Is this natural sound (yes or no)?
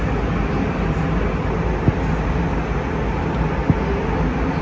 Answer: yes